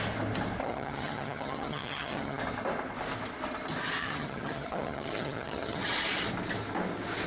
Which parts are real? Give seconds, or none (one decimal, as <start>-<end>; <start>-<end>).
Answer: 0.0-0.6; 2.4-4.0; 5.8-7.3